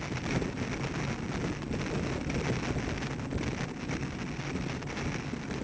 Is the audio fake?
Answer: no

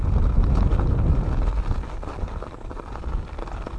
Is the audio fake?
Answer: no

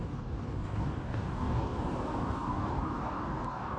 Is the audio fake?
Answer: yes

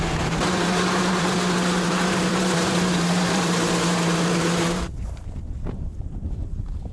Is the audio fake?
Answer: yes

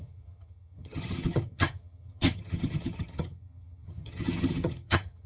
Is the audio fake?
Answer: yes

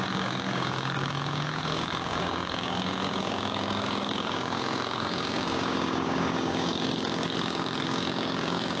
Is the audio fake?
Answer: yes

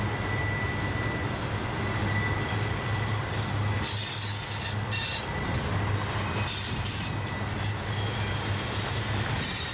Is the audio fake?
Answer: no